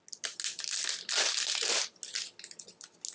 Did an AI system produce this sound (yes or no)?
no